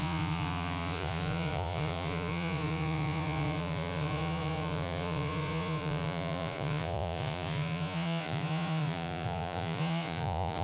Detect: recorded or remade remade